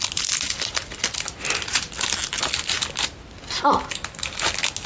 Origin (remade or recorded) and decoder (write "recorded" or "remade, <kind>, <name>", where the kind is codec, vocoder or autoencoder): recorded